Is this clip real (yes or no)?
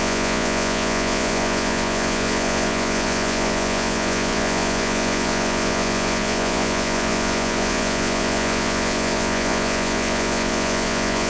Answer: no